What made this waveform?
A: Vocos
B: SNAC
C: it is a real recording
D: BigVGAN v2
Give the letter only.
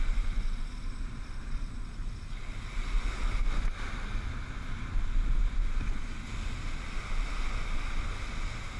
C